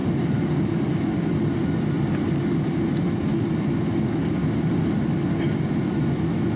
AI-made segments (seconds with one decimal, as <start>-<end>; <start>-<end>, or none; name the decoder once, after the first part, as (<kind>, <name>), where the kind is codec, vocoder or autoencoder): 4.0-4.4 (autoencoder, DAC-VAE); 5.7-6.6